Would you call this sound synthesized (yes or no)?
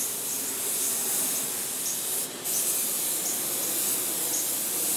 no